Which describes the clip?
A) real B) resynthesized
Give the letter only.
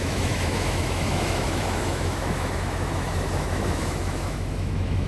B